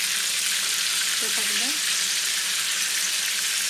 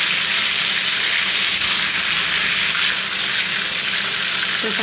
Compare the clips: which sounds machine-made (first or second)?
first